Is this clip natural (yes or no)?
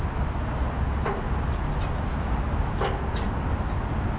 yes